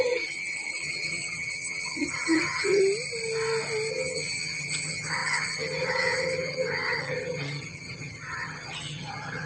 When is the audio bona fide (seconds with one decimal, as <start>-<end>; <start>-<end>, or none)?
2.8-3.9